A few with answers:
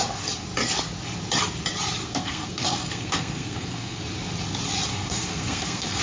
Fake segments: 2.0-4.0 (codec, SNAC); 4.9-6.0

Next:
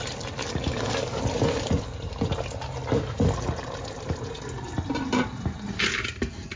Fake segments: 0.4-1.2 (codec, DAC)

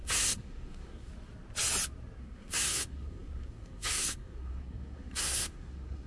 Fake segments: 0.0-1.1 (codec, SNAC); 2.2-6.1

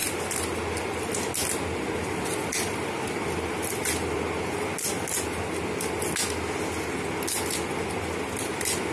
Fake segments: none

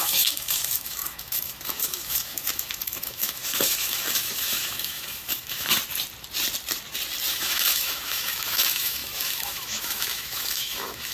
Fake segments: 0.0-5.8 (autoencoder, DAC-VAE); 7.3-11.1

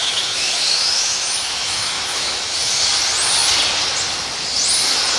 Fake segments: 0.0-2.9 (autoencoder, DAC-VAE)